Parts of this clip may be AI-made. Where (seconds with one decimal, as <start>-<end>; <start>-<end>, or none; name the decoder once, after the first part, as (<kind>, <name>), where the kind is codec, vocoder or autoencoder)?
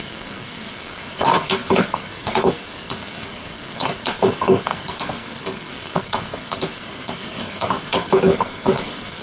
0.0-9.2 (codec, SNAC)